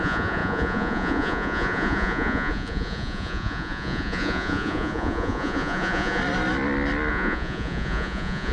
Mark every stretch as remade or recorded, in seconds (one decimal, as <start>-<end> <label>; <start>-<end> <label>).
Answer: 0.0-6.2 remade; 6.2-7.1 recorded; 7.1-8.5 remade